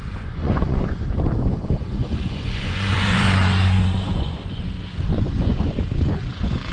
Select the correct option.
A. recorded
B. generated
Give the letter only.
B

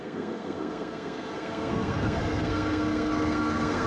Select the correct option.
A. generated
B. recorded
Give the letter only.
A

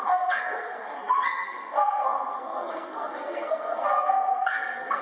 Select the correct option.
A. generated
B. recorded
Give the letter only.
A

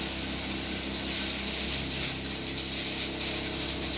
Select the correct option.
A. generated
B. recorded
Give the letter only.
B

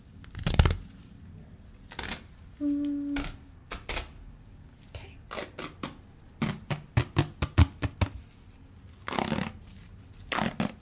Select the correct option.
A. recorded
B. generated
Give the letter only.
A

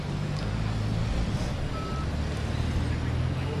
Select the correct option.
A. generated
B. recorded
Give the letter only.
B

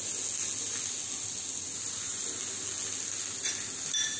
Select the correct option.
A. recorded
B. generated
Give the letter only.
A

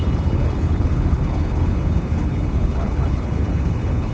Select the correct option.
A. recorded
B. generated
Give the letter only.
B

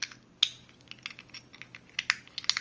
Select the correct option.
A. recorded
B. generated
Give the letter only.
A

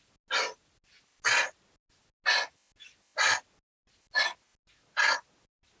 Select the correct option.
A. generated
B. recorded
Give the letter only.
B